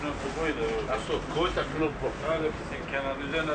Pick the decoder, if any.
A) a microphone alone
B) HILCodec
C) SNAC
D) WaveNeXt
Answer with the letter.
A